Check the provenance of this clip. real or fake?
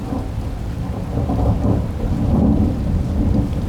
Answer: real